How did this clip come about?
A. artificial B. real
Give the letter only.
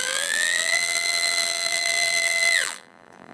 A